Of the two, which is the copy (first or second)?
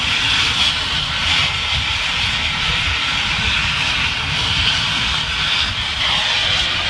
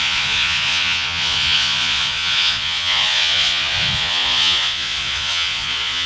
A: second